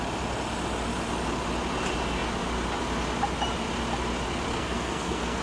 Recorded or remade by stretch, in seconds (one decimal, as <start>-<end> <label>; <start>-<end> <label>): 0.0-4.5 recorded; 4.5-5.4 remade